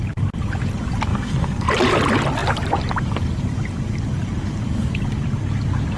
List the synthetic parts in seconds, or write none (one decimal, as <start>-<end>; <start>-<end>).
1.1-1.7

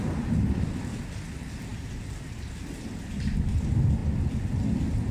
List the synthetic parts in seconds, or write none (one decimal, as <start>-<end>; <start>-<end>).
none

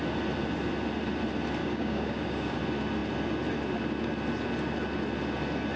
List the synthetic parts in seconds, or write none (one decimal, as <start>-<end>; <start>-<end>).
1.6-2.6

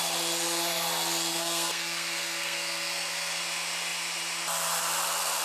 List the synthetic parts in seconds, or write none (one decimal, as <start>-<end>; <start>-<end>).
1.3-3.4

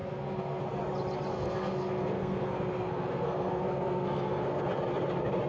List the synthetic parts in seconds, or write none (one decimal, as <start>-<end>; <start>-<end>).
0.0-0.6; 1.3-4.6

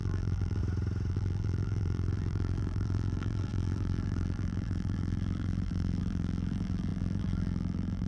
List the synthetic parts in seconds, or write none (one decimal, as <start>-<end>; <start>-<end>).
0.0-0.6; 1.1-8.1

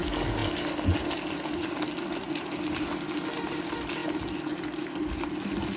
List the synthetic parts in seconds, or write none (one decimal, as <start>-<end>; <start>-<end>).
none

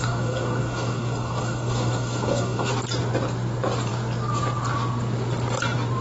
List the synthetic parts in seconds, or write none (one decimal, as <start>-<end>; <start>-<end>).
0.0-2.7